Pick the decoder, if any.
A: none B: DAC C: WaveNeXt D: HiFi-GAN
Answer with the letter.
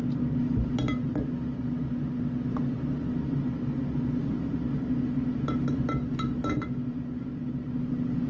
A